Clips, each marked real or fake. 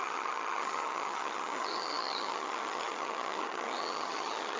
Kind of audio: fake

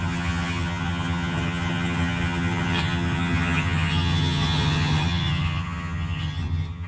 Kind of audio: fake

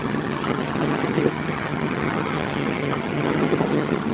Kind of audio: fake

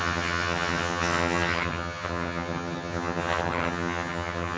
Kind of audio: fake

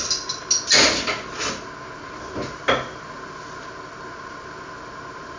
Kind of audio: real